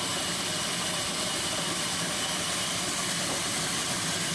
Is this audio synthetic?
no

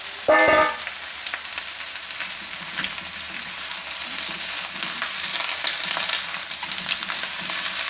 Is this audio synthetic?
no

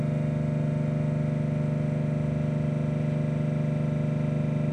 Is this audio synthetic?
no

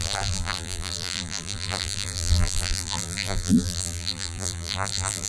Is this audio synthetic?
yes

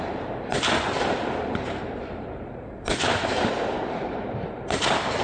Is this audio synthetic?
yes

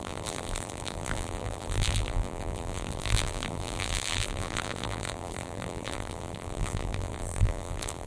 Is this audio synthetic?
yes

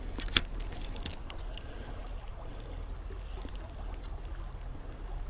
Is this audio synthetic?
no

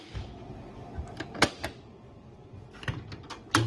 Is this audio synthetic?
no